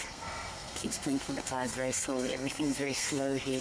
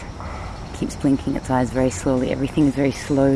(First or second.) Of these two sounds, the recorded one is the second